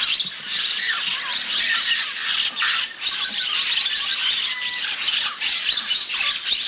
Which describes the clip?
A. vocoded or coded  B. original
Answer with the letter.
B